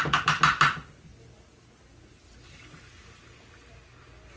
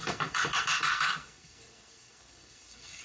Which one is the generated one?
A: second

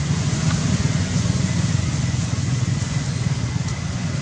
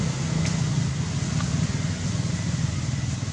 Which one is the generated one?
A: first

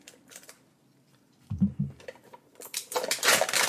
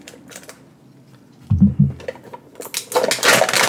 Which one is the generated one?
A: first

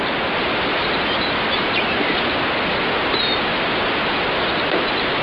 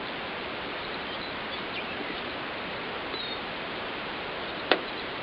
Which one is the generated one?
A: second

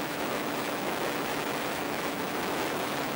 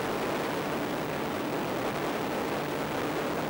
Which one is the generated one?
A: first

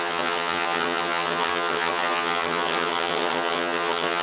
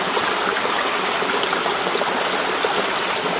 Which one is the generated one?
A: first